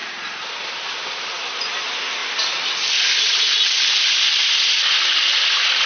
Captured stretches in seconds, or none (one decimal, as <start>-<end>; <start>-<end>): 0.0-2.2

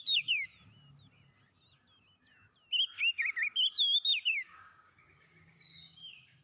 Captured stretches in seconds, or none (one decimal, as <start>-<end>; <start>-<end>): 0.5-4.3

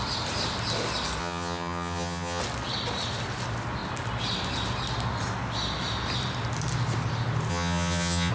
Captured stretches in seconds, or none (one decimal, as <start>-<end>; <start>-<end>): 0.0-1.2; 2.4-7.5

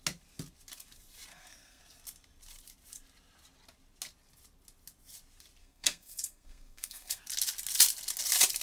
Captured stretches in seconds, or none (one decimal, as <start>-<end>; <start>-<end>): 0.0-1.3; 1.8-5.6; 7.2-8.6

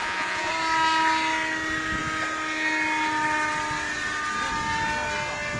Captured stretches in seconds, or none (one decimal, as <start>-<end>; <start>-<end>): 0.5-5.6

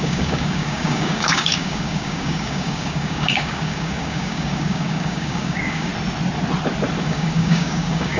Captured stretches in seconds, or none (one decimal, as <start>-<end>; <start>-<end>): 5.9-7.0